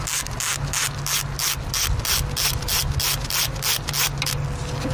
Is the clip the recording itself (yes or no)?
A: yes